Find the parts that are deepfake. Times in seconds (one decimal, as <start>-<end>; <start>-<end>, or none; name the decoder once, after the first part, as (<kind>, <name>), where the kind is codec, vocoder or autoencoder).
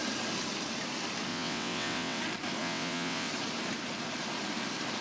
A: 1.3-2.2 (vocoder, WaveNeXt); 2.6-3.3